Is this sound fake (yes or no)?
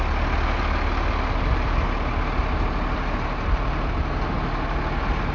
no